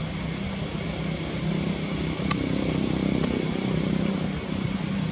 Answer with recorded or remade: recorded